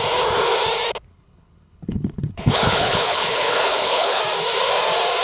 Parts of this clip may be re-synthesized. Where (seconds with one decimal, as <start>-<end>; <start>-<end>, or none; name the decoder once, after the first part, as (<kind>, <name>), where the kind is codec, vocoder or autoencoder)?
1.1-4.2 (codec, HILCodec)